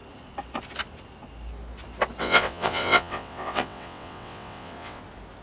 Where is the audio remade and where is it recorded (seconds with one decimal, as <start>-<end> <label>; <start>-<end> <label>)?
0.0-2.2 recorded; 2.2-5.0 remade; 5.0-5.4 recorded